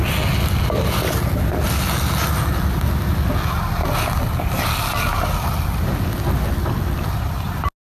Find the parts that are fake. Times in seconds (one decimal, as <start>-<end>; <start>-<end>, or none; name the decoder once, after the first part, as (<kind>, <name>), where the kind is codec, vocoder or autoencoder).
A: none